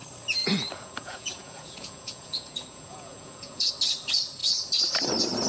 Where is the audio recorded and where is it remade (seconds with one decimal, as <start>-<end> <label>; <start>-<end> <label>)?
0.0-0.4 recorded; 0.4-3.7 remade; 3.7-5.5 recorded